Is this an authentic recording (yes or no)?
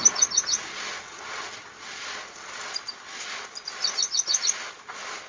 yes